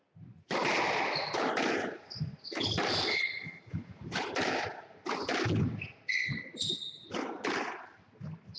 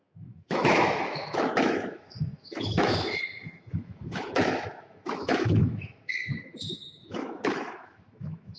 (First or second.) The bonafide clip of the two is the first